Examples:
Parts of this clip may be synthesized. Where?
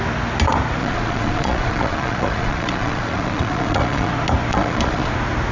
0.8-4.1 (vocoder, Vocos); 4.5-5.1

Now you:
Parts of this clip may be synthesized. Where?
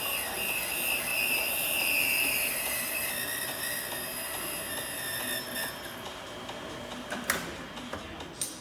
1.1-3.1 (vocoder, BigVGAN v2)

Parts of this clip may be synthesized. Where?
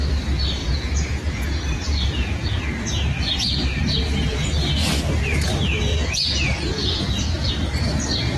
0.6-2.6 (vocoder, Vocos); 5.9-7.5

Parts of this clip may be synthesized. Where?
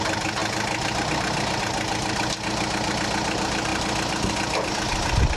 none